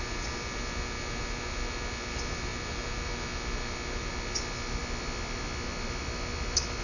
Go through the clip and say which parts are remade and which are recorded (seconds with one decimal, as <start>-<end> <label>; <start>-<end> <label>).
0.0-6.8 recorded

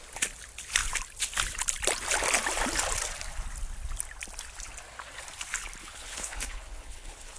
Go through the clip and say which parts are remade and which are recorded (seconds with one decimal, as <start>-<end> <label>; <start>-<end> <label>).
0.0-5.8 recorded; 5.8-7.4 remade

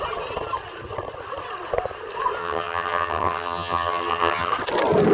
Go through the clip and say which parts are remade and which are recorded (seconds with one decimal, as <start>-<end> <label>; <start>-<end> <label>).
0.0-2.4 recorded; 2.4-4.5 remade; 4.5-5.1 recorded